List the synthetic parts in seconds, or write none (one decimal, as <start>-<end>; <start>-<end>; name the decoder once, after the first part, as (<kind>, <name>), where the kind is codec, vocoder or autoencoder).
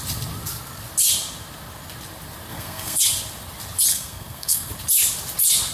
2.5-3.0 (codec, SNAC); 3.9-4.7